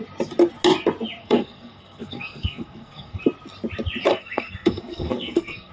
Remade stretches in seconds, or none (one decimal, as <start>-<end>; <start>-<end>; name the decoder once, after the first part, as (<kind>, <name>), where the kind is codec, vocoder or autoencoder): 1.2-3.2 (codec, SNAC); 4.1-5.7